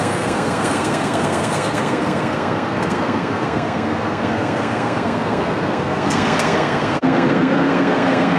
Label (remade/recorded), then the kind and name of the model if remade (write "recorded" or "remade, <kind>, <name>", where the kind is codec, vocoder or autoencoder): remade, codec, SNAC